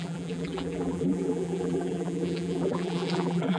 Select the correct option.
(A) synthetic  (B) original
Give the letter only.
A